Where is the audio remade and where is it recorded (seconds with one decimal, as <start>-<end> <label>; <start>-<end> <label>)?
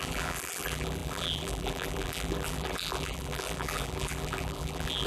0.0-5.1 remade